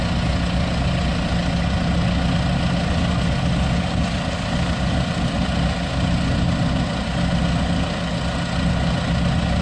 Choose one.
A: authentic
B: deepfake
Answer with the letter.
A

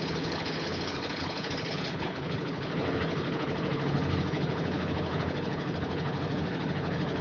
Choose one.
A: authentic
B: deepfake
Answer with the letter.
B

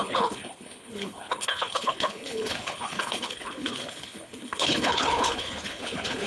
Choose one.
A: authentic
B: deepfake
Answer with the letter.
B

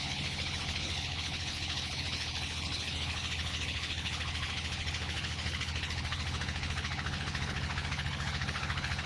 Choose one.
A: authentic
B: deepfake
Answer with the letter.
B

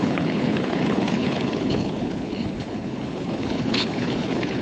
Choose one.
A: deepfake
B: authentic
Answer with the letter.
A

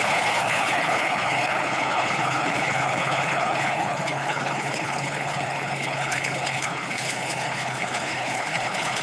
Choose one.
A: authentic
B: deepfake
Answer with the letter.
B